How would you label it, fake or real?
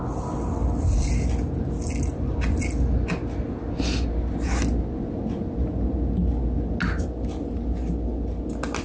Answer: real